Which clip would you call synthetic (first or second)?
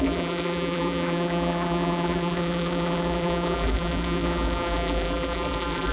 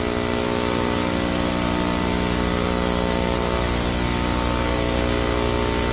first